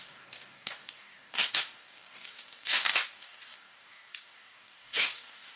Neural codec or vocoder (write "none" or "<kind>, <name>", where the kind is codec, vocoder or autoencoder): codec, DAC